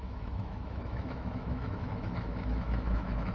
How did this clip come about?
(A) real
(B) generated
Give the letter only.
B